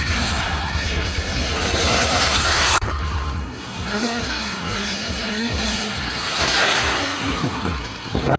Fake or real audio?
fake